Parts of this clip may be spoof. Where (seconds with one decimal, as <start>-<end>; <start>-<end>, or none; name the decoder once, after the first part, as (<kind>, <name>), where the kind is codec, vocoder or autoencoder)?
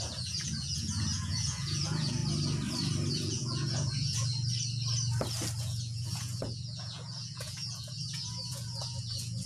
0.0-2.2 (vocoder, Vocos); 3.1-4.3; 5.6-9.5